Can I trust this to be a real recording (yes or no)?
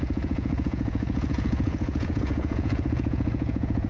no